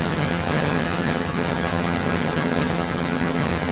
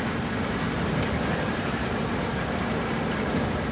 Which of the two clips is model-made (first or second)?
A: first